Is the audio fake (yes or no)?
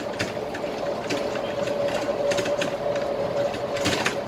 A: no